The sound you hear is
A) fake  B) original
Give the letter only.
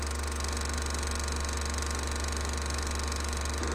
B